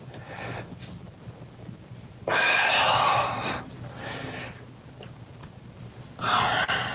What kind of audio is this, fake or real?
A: fake